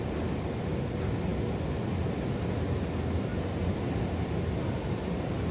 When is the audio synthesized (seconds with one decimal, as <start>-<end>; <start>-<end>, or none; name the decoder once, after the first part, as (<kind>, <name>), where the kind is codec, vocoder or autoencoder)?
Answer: none